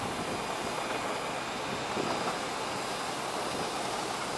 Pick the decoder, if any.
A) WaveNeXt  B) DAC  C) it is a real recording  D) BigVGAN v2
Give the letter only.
C